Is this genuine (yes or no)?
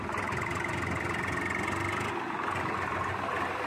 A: yes